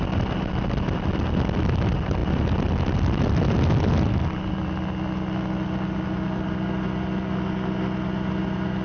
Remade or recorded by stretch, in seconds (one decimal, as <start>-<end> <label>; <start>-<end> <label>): 0.0-8.8 recorded